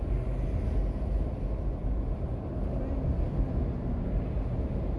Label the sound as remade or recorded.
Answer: recorded